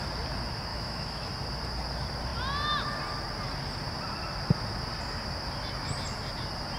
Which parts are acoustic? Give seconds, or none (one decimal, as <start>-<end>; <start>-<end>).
0.0-0.7; 1.3-6.8